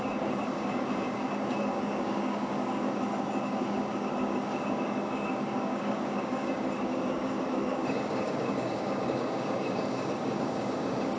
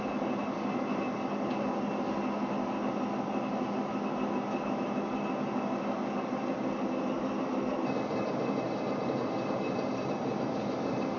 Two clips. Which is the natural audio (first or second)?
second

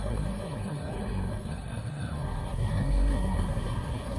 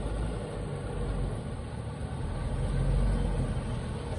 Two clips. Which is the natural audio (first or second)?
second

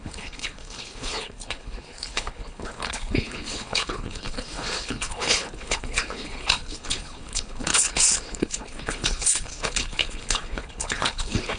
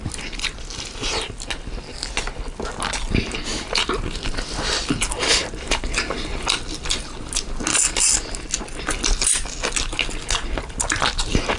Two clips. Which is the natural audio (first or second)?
second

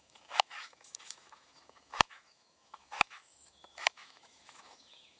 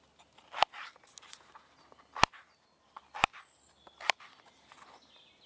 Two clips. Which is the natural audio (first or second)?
second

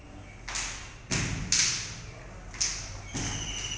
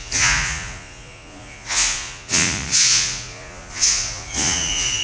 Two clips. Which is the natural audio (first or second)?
first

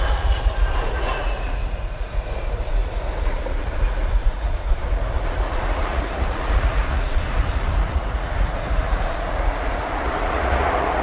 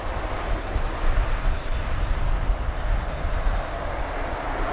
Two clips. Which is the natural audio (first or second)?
second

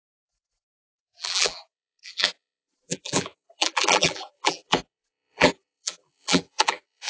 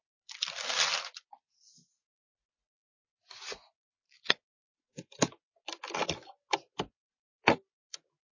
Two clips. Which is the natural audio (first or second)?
second